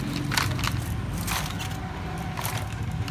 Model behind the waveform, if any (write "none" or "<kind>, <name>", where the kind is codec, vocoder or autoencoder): none